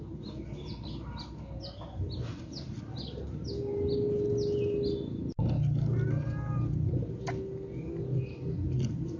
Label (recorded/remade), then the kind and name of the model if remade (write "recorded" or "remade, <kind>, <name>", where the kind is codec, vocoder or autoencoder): recorded